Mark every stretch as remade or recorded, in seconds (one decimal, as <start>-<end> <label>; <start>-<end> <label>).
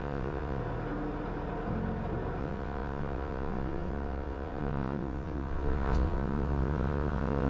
0.0-0.6 remade; 0.6-2.4 recorded; 2.4-7.5 remade